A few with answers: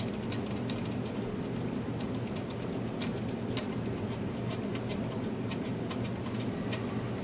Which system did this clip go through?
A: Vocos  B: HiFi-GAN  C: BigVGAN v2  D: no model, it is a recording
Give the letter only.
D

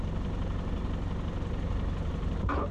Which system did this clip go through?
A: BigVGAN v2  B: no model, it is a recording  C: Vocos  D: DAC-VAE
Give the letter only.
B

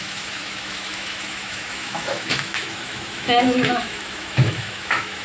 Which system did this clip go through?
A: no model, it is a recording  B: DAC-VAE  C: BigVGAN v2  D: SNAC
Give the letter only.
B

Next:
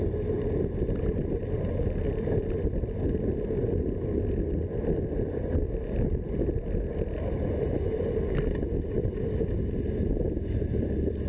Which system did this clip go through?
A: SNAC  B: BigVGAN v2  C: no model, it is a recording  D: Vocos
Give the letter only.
C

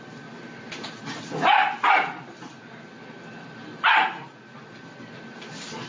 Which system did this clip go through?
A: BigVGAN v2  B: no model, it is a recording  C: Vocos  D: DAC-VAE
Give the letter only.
B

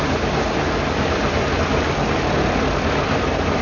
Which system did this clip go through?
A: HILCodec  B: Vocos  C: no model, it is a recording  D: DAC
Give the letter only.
C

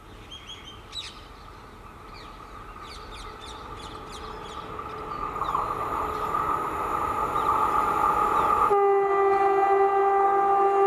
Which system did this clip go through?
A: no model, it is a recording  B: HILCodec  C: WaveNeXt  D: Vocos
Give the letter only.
A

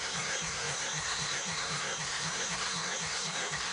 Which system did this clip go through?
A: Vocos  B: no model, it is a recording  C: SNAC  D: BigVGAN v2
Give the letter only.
C